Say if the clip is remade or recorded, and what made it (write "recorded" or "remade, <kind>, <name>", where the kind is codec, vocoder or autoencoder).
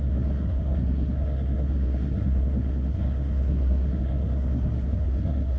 remade, codec, SNAC